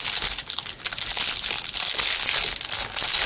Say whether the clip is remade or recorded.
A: recorded